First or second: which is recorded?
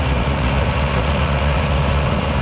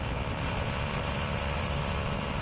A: second